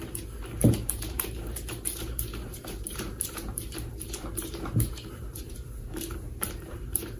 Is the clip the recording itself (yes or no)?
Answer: no